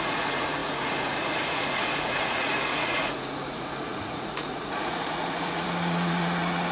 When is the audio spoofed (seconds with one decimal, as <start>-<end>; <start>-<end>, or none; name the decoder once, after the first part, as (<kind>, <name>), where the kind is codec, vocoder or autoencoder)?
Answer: 0.0-6.7 (vocoder, Vocos)